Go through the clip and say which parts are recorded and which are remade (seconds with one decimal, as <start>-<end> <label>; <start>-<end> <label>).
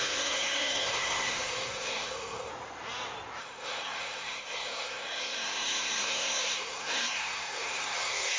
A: 0.0-2.5 remade; 2.5-3.4 recorded; 3.4-8.4 remade